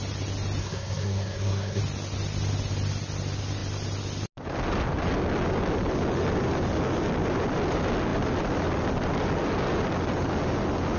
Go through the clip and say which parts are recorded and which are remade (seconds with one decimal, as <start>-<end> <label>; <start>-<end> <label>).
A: 0.0-0.6 recorded; 0.6-1.8 remade; 1.8-11.0 recorded

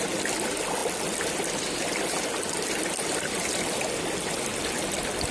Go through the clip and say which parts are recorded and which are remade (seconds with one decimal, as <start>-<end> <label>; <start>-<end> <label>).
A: 0.0-5.3 recorded

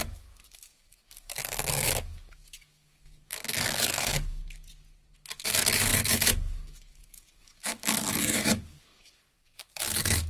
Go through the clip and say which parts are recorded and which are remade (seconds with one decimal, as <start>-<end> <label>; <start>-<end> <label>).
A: 0.0-4.4 remade; 4.4-5.3 recorded; 5.3-10.3 remade